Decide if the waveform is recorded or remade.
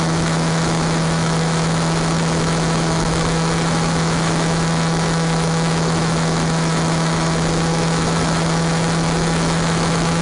remade